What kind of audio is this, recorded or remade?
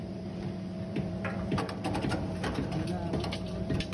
remade